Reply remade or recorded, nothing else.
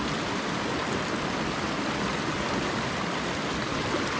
recorded